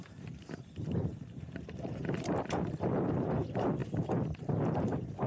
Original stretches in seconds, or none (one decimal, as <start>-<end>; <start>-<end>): 0.6-5.3

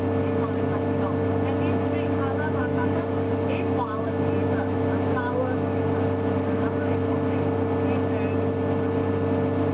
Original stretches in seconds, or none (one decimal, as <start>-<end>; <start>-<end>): 0.0-2.6; 3.3-9.7

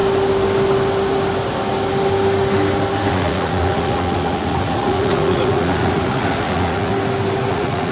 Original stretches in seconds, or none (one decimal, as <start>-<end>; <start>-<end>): 0.0-3.1; 6.9-7.5

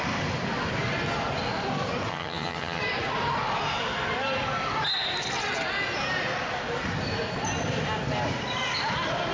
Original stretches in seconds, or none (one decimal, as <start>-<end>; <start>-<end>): 0.0-2.1; 2.8-9.3

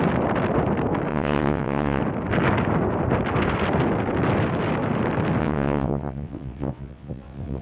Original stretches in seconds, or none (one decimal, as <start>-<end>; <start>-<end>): 0.0-1.1; 2.0-5.4

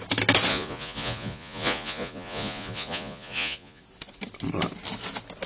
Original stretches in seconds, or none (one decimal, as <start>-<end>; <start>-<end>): 0.0-0.5; 3.8-5.5

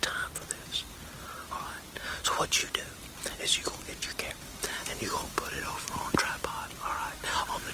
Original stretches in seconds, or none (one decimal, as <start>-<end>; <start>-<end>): 0.0-7.7